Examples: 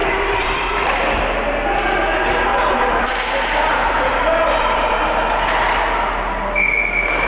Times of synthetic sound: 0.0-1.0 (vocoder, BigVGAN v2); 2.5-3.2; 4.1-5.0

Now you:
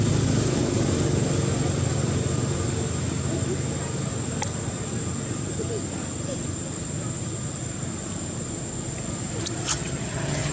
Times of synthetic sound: 9.7-10.5 (vocoder, HiFi-GAN)

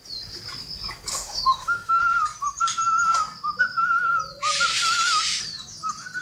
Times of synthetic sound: 1.1-2.0 (autoencoder, DAC-VAE); 4.7-5.4

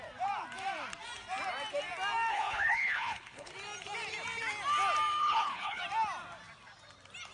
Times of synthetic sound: 2.3-3.5 (codec, HILCodec); 5.2-5.8

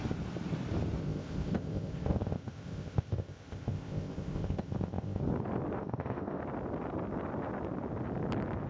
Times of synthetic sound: 1.0-5.2 (codec, ZipCodec); 5.8-6.4

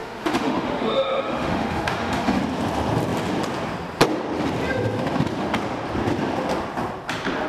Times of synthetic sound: 0.0-2.4 (autoencoder, DAC-VAE)

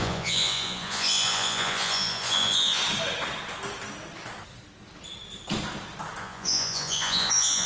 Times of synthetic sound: 0.0-2.8 (vocoder, Vocos); 6.2-7.7